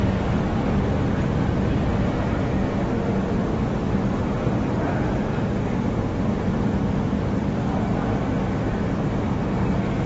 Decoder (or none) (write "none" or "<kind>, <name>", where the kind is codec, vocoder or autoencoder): none